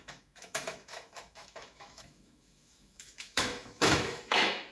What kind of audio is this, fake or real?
fake